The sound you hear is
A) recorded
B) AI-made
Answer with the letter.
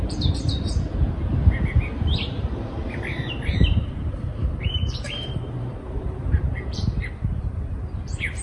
B